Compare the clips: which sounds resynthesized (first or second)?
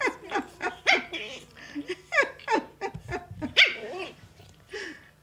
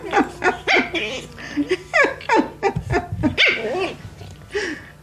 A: first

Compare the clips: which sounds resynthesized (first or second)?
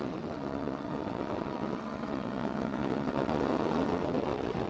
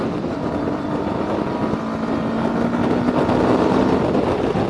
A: first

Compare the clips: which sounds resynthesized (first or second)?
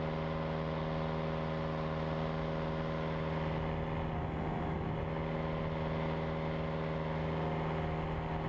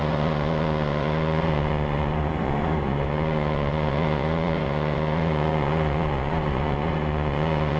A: second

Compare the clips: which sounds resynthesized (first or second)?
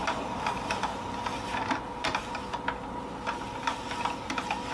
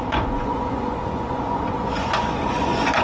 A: second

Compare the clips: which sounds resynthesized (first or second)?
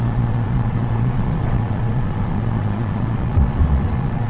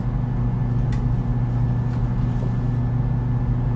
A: first